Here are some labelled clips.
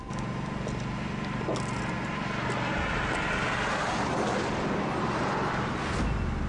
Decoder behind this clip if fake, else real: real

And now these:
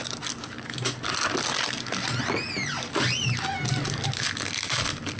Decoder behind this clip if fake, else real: real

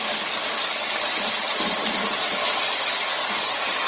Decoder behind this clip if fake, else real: real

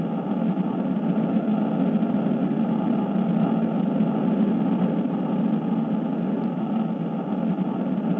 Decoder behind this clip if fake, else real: real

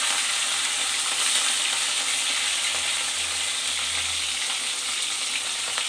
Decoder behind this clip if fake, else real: real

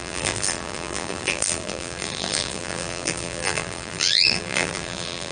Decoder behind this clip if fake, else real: fake, vocoder, BigVGAN v2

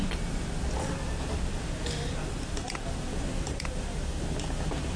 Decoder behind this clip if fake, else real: real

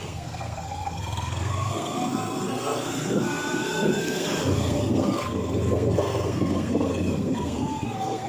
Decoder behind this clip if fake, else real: fake, codec, SNAC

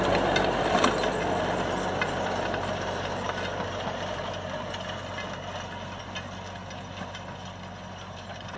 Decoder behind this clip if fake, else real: real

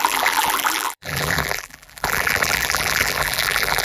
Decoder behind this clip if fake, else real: fake, vocoder, BigVGAN v2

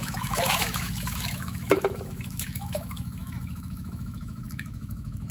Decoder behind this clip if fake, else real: fake, autoencoder, DAC-VAE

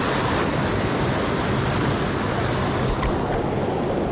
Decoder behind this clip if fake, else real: real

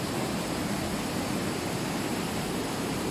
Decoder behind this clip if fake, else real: real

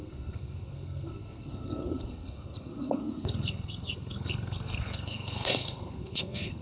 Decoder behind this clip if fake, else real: fake, codec, SNAC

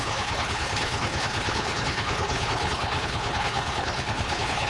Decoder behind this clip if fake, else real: fake, codec, HILCodec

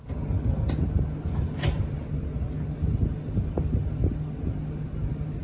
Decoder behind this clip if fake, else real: real